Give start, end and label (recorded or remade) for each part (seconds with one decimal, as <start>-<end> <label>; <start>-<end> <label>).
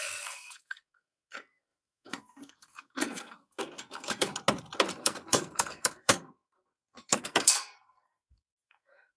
0.0-4.3 remade; 4.3-5.0 recorded; 5.0-9.2 remade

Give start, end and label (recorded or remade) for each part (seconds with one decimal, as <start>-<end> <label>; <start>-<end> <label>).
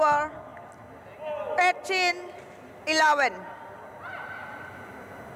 0.0-5.4 recorded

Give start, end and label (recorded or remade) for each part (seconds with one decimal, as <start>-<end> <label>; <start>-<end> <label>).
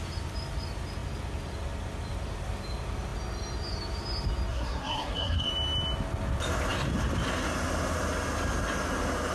0.0-4.5 recorded; 4.5-5.5 remade; 5.5-9.3 recorded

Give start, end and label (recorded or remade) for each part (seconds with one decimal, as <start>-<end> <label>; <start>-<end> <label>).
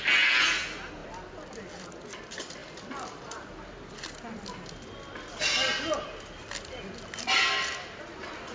0.0-8.5 recorded